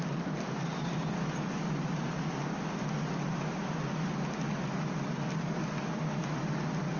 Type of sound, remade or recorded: recorded